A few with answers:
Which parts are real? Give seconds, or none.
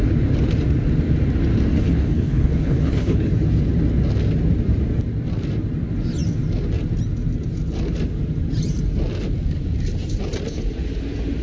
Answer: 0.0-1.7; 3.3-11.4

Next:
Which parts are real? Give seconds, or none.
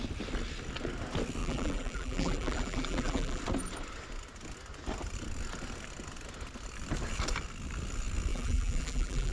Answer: 0.0-1.4; 3.4-8.3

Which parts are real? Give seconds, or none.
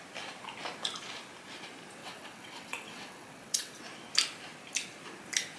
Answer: 0.0-2.0; 3.8-5.6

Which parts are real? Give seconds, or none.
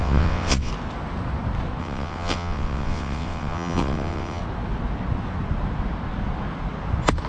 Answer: 0.7-1.8; 4.4-7.3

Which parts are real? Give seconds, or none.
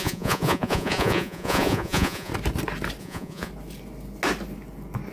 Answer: 2.3-3.0; 3.5-5.1